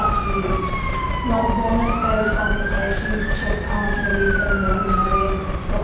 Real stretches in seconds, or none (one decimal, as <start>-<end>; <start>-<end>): 0.0-2.0; 3.4-5.8